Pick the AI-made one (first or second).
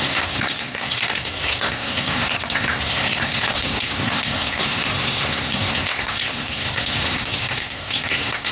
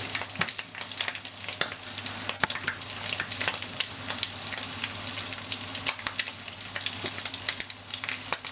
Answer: first